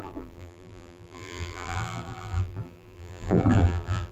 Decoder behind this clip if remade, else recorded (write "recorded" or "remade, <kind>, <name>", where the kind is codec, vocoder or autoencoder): remade, vocoder, BigVGAN v2